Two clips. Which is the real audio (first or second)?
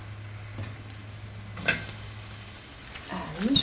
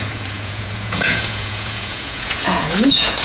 first